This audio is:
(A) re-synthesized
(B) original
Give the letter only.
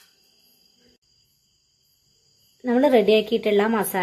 B